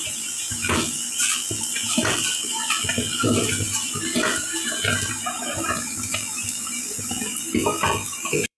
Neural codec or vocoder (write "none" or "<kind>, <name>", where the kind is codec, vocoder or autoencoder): vocoder, BigVGAN v2